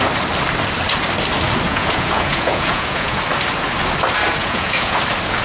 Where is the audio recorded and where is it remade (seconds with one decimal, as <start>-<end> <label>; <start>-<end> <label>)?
0.0-1.7 recorded; 1.7-3.2 remade; 3.2-4.4 recorded; 4.4-5.0 remade; 5.0-5.4 recorded

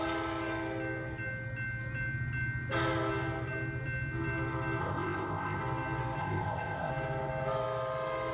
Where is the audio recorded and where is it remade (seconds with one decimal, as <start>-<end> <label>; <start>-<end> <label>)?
0.0-4.8 recorded; 4.8-5.6 remade; 5.6-6.2 recorded; 6.2-6.9 remade; 6.9-8.3 recorded